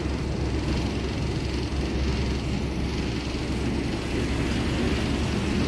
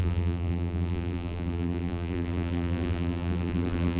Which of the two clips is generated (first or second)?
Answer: second